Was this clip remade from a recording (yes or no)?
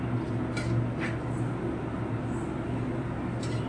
no